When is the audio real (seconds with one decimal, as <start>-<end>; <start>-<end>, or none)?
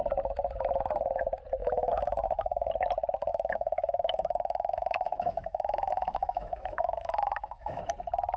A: 0.0-1.6; 2.7-3.3; 7.8-8.4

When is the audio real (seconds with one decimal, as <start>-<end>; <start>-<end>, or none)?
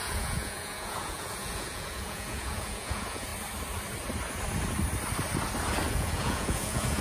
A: 3.3-5.9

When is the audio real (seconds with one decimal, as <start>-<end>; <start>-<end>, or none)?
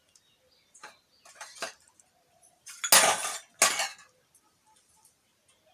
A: 0.0-5.7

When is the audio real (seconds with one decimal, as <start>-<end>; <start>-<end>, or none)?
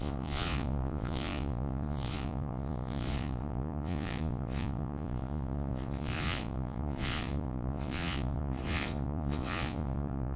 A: none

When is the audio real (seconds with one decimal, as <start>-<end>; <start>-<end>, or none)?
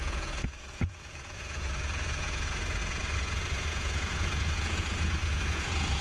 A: none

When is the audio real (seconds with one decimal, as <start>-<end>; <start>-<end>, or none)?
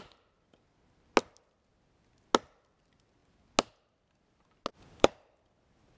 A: 0.0-4.7; 5.6-6.0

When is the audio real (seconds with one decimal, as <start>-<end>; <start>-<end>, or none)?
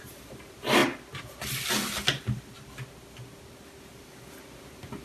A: 0.8-3.8